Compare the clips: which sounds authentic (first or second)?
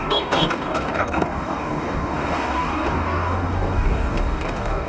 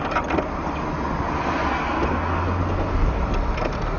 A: second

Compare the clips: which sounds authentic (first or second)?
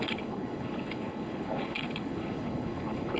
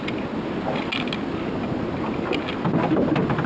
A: second